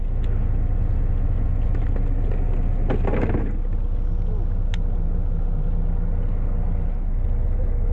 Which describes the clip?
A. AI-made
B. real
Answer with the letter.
B